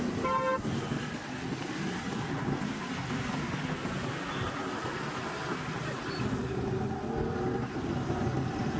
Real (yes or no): yes